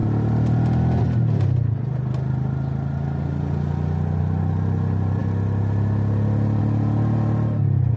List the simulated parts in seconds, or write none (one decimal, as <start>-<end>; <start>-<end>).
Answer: none